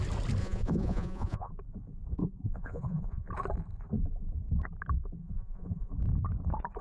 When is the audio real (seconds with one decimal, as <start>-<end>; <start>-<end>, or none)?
0.0-0.4; 1.5-2.2; 3.3-5.2; 5.9-6.8